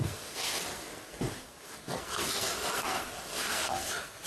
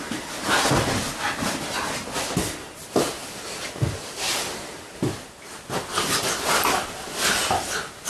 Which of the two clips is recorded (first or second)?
second